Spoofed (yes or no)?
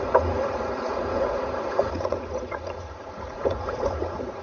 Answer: yes